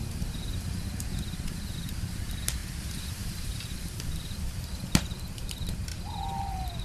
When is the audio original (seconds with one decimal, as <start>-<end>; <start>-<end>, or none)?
2.6-3.1; 5.9-6.8